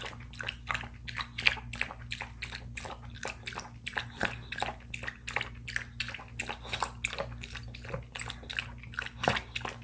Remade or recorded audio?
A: recorded